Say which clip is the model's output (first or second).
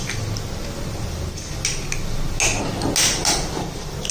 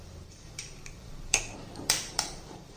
second